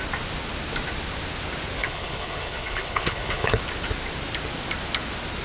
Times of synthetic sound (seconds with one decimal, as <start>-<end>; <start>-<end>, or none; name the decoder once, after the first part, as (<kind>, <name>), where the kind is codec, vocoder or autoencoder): 1.8-3.6 (codec, HILCodec)